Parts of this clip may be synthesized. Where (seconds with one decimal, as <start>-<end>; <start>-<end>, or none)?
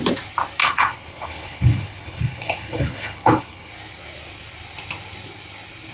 0.6-3.7